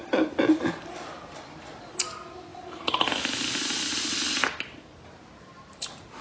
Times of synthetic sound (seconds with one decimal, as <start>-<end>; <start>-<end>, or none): none